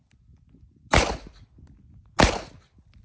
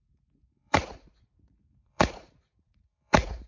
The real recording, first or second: first